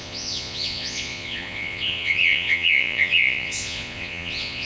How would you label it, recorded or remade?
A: remade